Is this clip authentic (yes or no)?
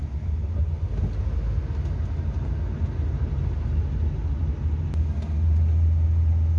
yes